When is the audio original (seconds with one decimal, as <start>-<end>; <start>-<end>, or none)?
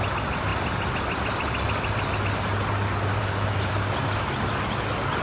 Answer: 0.0-3.2; 3.7-5.2